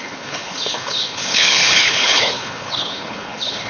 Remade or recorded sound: remade